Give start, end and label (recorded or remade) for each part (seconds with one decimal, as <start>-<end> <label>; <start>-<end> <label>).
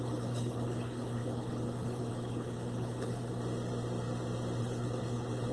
0.0-3.2 remade; 3.2-4.6 recorded; 4.6-5.5 remade